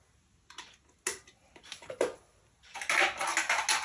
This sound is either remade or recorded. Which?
recorded